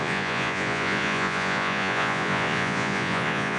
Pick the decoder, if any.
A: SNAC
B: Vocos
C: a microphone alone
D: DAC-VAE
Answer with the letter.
B